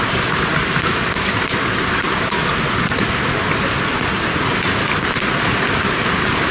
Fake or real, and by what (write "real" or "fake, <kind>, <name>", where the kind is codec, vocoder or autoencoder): real